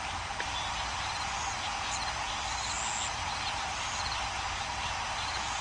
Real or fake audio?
real